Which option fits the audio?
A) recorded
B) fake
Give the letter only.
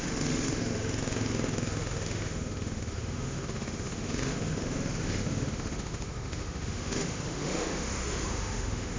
B